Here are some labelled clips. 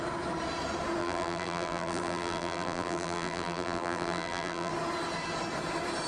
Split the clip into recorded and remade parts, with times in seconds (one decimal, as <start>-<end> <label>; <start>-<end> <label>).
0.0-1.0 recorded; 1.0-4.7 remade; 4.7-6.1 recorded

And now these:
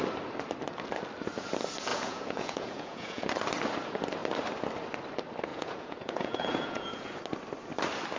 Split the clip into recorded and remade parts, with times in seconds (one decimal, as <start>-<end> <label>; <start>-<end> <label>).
0.0-1.9 recorded; 1.9-3.3 remade; 3.3-5.5 recorded; 5.5-7.2 remade; 7.2-8.2 recorded

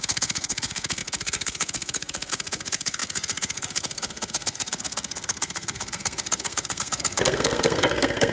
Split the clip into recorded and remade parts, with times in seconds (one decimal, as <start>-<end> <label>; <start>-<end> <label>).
0.0-8.3 remade

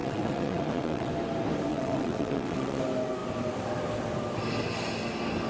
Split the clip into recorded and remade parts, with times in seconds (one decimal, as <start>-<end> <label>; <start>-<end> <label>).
0.0-1.1 remade; 1.1-1.7 recorded; 1.7-2.8 remade; 2.8-5.5 recorded

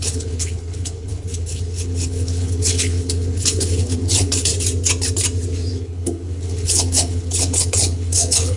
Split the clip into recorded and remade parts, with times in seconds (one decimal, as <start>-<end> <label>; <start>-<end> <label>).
0.0-4.5 remade; 4.5-5.7 recorded; 5.7-8.6 remade

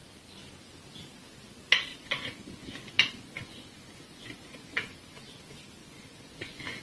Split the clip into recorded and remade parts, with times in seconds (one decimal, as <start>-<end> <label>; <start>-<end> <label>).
0.0-1.9 recorded; 1.9-5.2 remade; 5.2-5.8 recorded; 5.8-6.8 remade